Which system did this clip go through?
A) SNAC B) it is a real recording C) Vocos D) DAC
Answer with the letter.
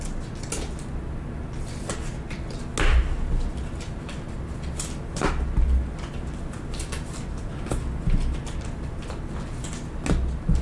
B